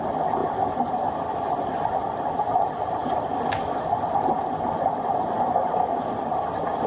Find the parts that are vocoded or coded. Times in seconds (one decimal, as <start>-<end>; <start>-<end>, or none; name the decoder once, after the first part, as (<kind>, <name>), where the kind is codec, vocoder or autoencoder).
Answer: none